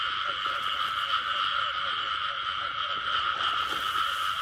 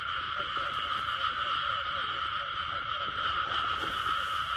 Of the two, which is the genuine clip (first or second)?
first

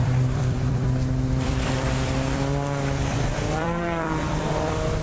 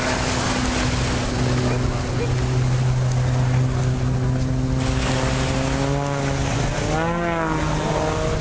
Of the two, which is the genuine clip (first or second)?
second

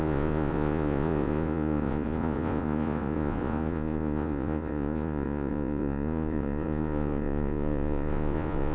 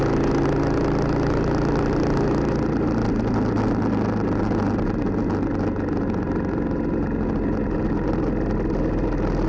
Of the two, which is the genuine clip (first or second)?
second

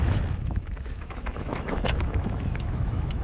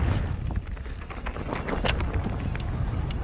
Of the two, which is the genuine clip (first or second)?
second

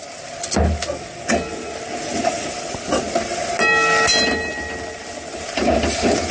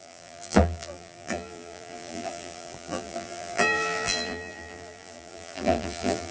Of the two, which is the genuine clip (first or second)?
first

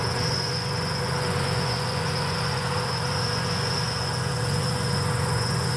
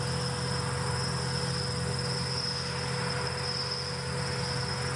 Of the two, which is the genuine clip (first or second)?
second